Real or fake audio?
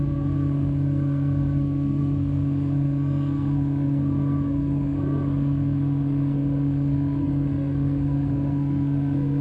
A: fake